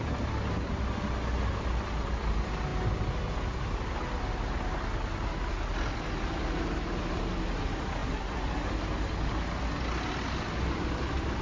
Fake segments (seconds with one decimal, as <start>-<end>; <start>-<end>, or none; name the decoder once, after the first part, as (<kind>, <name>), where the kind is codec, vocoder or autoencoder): none